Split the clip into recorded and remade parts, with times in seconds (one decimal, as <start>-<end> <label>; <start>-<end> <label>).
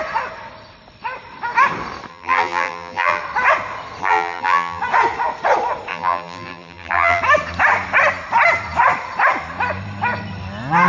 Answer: 0.0-2.1 recorded; 2.1-3.2 remade; 3.2-4.0 recorded; 4.0-4.8 remade; 4.8-5.9 recorded; 5.9-7.2 remade; 7.2-10.9 recorded